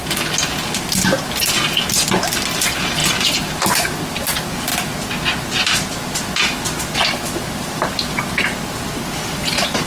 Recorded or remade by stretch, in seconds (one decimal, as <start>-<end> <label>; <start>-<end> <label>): 0.0-9.9 recorded